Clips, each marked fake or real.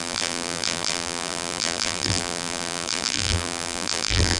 fake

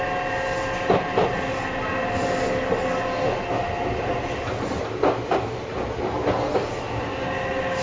real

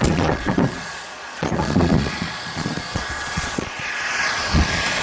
fake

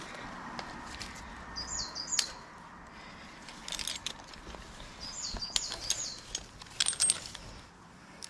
real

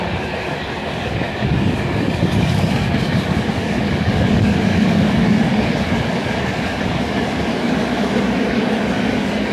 fake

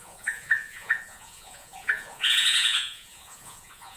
fake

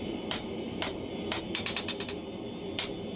real